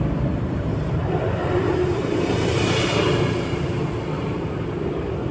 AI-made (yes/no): yes